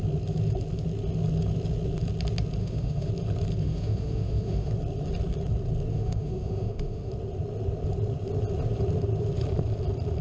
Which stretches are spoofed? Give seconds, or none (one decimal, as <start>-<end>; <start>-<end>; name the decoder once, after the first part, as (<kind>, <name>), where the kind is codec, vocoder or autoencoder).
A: 2.6-3.1 (autoencoder, DAC-VAE); 3.6-4.7; 5.9-7.1

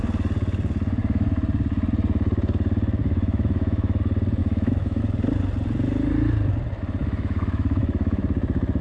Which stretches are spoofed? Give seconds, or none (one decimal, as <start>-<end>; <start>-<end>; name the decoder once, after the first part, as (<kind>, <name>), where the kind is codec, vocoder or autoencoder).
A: 3.0-4.0 (autoencoder, DAC-VAE); 4.4-5.0; 7.0-8.2

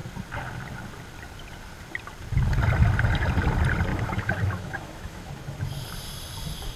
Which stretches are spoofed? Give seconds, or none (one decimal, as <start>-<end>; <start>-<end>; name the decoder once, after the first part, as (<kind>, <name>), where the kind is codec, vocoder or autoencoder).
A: 3.9-5.3 (autoencoder, DAC-VAE)